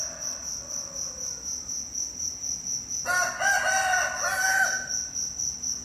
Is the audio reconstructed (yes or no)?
no